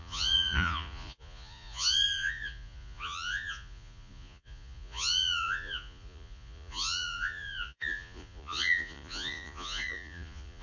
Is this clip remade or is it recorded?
remade